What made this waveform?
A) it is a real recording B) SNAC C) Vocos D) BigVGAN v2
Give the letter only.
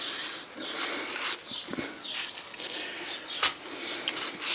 A